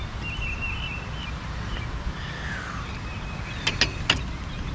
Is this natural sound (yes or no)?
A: yes